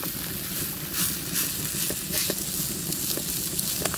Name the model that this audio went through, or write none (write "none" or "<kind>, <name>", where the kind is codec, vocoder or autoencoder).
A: none